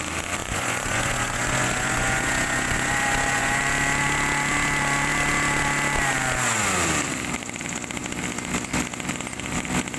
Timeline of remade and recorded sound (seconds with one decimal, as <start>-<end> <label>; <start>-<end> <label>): 0.0-0.4 recorded; 0.4-3.6 remade; 3.6-10.0 recorded